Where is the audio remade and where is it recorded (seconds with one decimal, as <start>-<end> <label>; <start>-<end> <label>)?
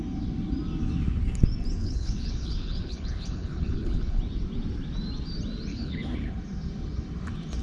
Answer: 0.0-1.8 recorded; 1.8-4.2 remade; 4.2-5.7 recorded; 5.7-6.3 remade; 6.3-7.6 recorded